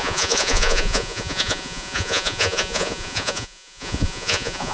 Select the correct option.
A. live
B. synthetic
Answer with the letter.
B